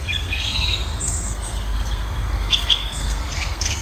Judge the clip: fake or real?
fake